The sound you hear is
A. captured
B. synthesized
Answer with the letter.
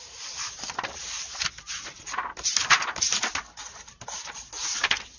A